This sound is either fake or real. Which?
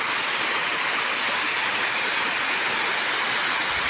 real